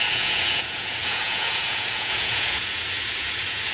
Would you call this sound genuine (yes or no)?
no